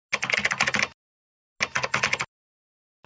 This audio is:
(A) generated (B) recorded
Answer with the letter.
B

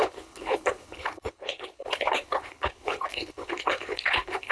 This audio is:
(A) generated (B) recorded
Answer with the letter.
A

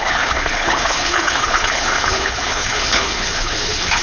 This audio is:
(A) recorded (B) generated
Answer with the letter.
B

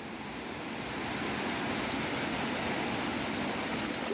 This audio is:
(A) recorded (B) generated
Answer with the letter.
A